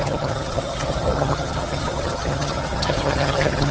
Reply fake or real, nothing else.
fake